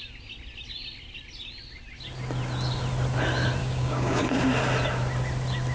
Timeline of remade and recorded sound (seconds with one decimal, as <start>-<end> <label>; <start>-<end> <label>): 0.0-3.6 recorded; 3.6-4.2 remade; 4.2-5.7 recorded